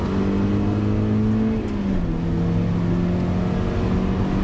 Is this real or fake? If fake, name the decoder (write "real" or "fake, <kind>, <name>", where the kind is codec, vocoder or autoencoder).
real